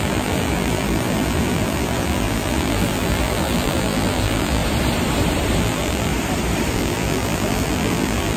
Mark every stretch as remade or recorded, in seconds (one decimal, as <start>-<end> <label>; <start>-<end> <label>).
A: 0.0-4.6 remade; 4.6-5.6 recorded; 5.6-6.1 remade; 6.1-6.7 recorded; 6.7-8.4 remade